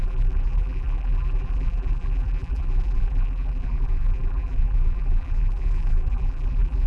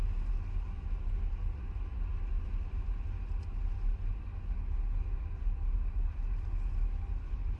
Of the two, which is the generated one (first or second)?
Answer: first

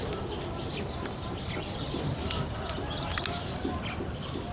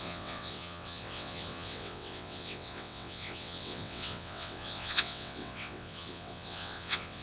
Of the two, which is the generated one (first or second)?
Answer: second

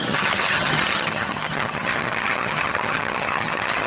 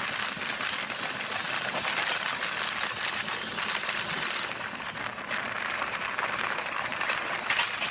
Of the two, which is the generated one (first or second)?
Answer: first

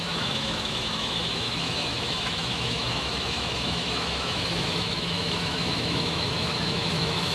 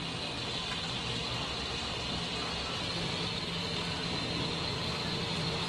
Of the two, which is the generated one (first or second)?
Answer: first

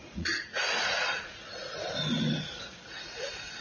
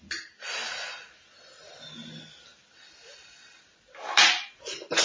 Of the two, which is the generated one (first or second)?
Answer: first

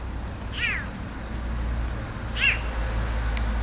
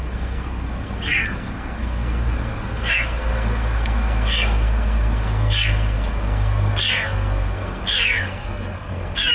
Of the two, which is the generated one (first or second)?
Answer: second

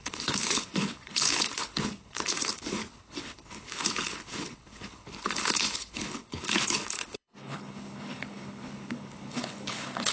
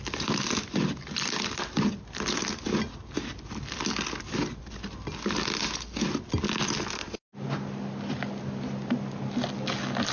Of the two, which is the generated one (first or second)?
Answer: first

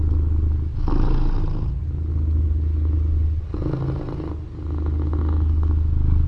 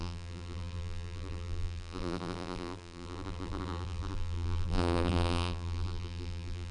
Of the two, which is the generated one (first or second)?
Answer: second